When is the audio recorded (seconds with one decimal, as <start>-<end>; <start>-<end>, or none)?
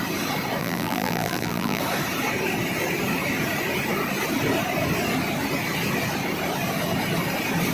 0.0-0.6; 1.8-7.7